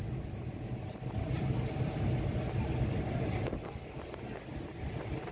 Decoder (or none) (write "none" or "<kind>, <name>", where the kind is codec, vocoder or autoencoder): none